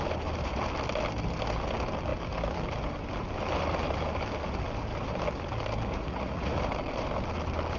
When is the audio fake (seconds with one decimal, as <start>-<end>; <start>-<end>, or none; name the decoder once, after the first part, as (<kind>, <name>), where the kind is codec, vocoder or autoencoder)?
5.9-6.6 (vocoder, Vocos)